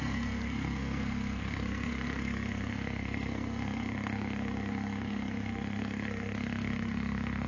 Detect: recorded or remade remade